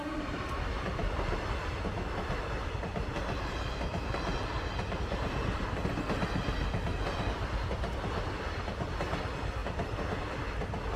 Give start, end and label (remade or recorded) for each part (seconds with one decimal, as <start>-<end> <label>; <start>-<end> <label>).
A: 0.0-11.0 recorded